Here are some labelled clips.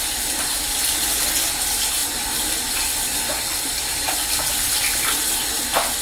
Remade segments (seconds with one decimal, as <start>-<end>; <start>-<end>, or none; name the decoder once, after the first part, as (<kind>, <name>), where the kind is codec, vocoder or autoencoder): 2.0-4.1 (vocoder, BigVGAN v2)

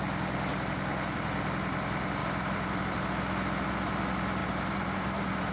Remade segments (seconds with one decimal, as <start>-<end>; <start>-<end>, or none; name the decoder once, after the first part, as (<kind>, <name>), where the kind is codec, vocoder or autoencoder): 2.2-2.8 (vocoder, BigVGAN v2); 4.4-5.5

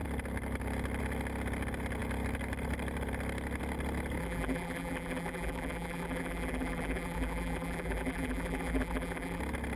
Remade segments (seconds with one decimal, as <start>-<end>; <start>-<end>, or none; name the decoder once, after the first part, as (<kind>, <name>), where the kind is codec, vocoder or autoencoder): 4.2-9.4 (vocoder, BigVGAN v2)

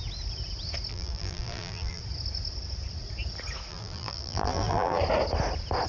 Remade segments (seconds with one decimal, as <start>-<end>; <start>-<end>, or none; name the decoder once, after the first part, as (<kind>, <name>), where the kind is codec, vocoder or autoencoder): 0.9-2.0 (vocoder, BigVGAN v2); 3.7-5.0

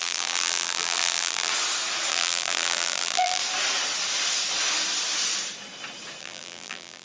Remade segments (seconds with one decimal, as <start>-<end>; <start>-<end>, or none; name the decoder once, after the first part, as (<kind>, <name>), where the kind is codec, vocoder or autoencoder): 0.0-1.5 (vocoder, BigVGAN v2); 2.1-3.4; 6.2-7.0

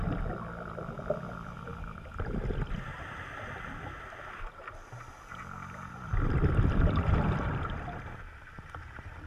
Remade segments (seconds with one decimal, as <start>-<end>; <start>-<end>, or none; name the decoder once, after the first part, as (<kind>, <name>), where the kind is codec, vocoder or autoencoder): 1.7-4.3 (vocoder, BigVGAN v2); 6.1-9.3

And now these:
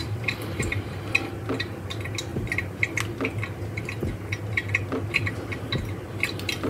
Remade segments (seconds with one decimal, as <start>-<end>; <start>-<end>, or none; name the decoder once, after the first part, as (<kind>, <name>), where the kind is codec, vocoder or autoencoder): 0.0-1.1 (vocoder, BigVGAN v2); 2.3-3.0

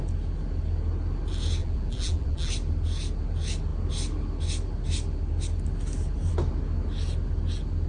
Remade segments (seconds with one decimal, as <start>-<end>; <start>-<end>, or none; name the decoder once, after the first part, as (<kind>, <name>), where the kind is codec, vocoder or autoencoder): 1.6-2.5 (vocoder, BigVGAN v2)